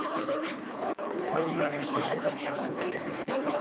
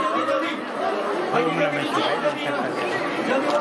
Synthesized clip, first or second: first